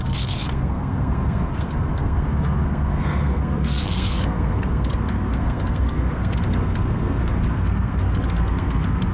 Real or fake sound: fake